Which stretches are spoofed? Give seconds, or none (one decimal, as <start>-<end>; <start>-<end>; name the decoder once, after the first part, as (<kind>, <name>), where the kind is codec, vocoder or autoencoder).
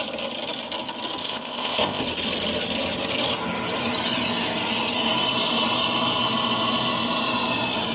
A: 1.2-2.0 (codec, ZipCodec)